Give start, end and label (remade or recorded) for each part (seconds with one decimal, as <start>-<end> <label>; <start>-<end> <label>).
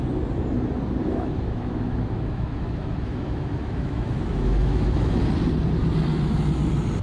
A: 0.0-1.0 recorded; 1.0-5.2 remade; 5.2-7.0 recorded